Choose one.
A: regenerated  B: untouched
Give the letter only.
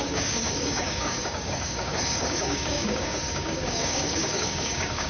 A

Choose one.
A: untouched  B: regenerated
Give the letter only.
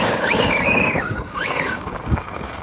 B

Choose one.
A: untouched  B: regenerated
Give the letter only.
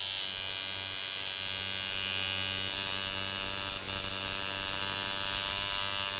A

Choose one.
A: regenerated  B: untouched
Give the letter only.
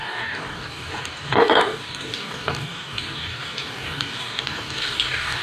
A